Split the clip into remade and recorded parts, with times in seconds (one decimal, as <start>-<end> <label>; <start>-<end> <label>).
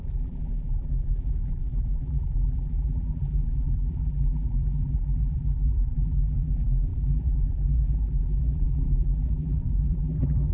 0.0-10.5 remade